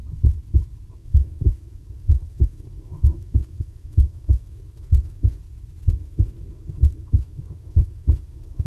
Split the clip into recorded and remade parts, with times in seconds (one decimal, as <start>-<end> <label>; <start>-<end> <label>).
0.0-0.9 recorded; 0.9-5.4 remade; 5.4-5.9 recorded; 5.9-8.7 remade